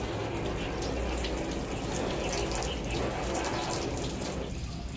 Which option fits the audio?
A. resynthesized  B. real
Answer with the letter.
B